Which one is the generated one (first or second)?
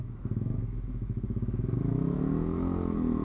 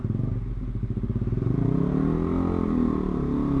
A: first